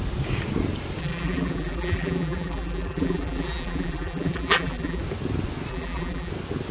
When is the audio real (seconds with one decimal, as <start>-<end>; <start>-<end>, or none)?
0.0-1.0; 5.0-5.7; 6.3-6.7